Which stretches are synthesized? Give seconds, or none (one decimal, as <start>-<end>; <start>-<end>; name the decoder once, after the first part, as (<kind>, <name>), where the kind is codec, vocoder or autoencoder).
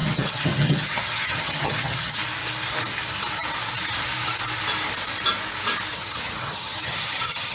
0.0-2.2 (vocoder, HiFi-GAN); 5.9-7.5